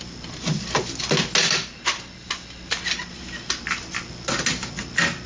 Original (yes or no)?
yes